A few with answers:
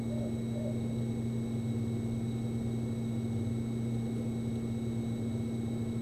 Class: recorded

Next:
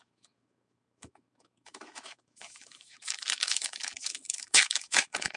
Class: remade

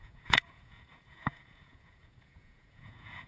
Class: remade